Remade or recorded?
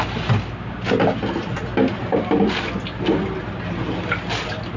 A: recorded